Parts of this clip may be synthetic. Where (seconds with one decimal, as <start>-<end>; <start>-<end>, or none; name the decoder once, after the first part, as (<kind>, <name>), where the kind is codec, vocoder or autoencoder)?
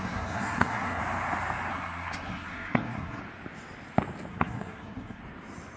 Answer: 0.0-1.0 (codec, SNAC); 1.7-3.2; 4.3-5.2